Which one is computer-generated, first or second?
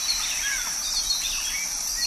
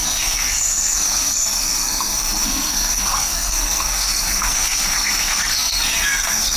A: second